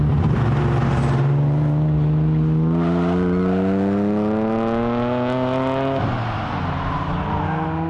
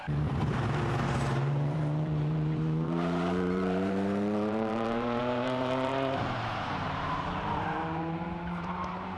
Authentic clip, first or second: first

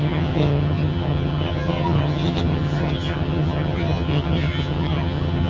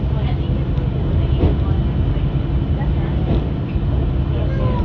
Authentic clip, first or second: second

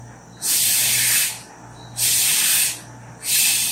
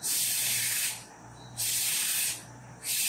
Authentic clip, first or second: first